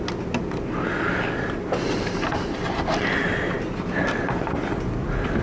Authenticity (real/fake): real